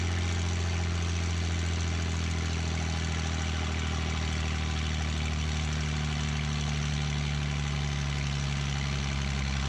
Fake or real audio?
real